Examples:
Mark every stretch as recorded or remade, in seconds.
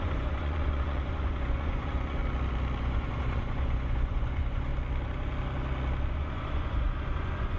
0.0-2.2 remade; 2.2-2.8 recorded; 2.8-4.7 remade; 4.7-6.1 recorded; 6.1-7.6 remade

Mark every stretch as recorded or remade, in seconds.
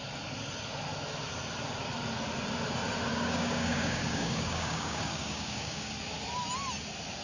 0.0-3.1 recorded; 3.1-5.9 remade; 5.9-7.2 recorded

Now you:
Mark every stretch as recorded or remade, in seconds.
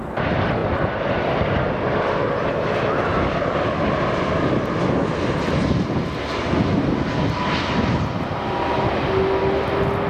0.0-10.1 recorded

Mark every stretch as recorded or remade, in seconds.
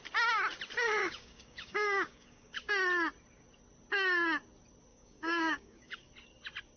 0.0-1.0 recorded; 1.0-2.7 remade; 2.7-4.9 recorded; 4.9-6.1 remade; 6.1-6.8 recorded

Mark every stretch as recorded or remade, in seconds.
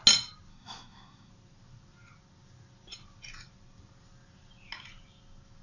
0.0-0.5 recorded; 0.5-1.3 remade; 1.3-5.6 recorded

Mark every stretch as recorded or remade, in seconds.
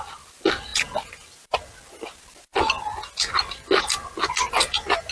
0.0-5.1 recorded